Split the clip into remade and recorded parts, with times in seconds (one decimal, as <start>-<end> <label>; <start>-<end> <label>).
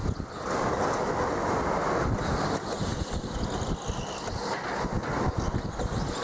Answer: 0.0-6.2 recorded